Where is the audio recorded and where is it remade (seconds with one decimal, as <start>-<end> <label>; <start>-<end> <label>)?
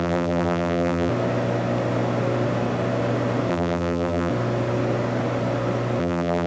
0.0-1.1 remade; 1.1-3.5 recorded; 3.5-4.3 remade; 4.3-6.0 recorded; 6.0-6.5 remade